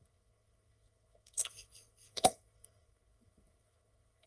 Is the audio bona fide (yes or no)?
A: no